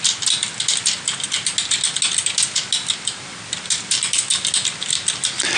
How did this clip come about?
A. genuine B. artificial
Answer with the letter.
A